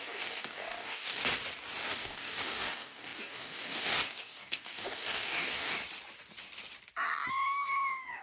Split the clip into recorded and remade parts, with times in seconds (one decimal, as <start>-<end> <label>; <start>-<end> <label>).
0.0-1.2 remade; 1.2-1.8 recorded; 1.8-5.8 remade; 5.8-7.3 recorded; 7.3-8.2 remade